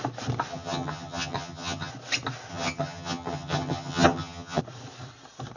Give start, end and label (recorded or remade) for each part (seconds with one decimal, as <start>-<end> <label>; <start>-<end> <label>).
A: 0.0-0.5 recorded; 0.5-1.9 remade; 1.9-2.5 recorded; 2.5-4.6 remade; 4.6-5.6 recorded